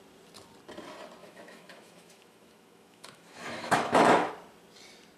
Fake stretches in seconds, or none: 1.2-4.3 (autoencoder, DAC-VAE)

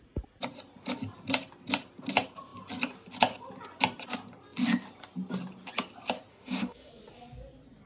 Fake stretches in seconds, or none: 6.3-6.9 (autoencoder, DAC-VAE)